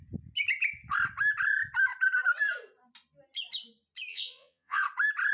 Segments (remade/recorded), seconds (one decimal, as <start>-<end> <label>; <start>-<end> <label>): 0.0-4.1 recorded; 4.1-4.8 remade; 4.8-5.3 recorded